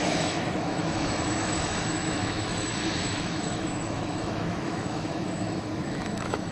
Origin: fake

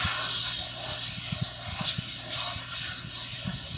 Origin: real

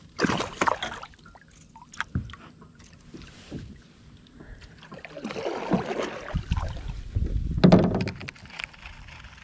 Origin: real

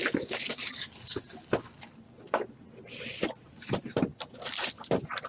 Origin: real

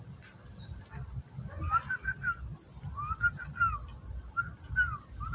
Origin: real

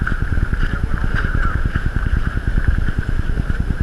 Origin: fake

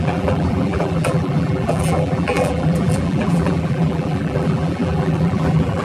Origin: fake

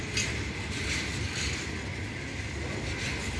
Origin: real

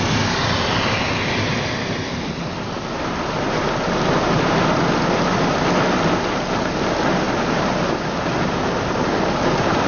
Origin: real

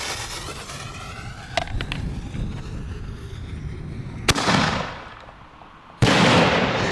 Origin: real